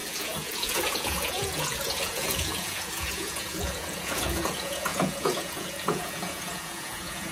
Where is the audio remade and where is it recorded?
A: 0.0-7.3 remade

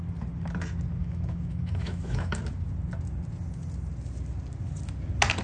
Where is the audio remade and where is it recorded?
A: 0.0-1.0 recorded; 1.0-2.4 remade; 2.4-5.4 recorded

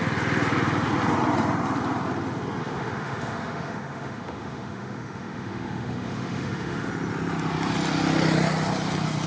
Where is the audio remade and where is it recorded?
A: 0.0-2.6 recorded; 2.6-6.9 remade; 6.9-9.3 recorded

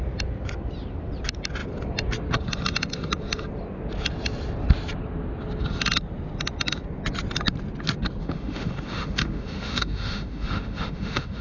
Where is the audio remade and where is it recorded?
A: 0.0-8.2 recorded; 8.2-11.4 remade